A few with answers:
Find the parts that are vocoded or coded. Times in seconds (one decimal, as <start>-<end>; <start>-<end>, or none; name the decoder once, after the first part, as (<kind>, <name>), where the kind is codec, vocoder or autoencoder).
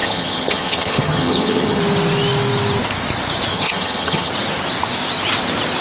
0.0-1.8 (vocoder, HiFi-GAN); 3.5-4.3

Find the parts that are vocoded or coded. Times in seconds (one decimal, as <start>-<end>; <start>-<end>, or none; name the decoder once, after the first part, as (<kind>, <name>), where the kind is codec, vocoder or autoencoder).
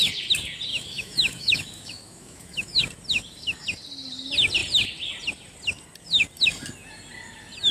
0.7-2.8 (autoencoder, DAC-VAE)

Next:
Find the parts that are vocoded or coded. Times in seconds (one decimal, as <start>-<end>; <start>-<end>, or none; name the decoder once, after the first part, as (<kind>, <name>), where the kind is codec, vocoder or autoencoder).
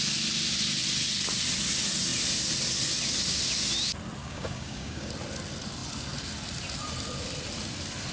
4.2-5.1 (codec, DAC)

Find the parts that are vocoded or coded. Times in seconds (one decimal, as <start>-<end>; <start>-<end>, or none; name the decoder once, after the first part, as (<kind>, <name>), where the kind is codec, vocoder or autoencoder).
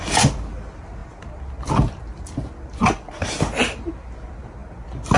none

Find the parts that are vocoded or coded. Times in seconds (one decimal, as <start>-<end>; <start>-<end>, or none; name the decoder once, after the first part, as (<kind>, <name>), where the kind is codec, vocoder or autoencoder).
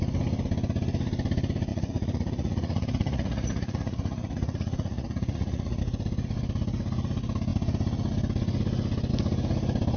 1.7-5.8 (vocoder, Vocos)